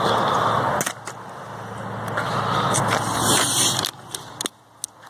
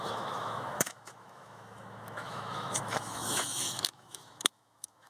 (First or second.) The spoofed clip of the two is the second